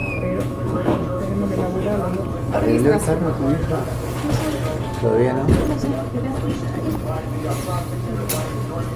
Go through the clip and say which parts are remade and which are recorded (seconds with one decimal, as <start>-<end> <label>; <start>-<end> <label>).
0.0-2.2 remade; 2.2-9.0 recorded